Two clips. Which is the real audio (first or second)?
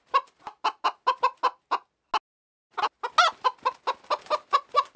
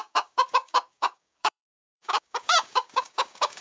first